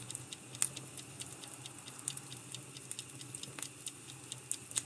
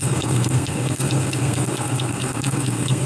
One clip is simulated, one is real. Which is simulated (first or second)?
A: second